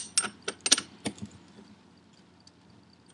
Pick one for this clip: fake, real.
real